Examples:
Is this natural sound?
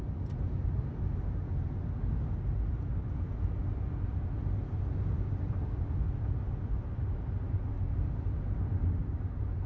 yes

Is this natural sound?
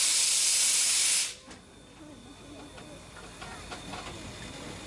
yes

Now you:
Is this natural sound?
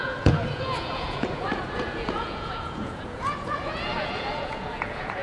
no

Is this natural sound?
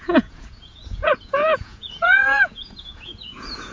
no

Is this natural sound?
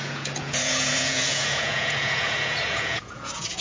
no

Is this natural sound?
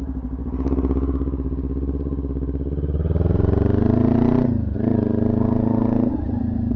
yes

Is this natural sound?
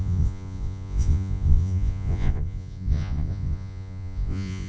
no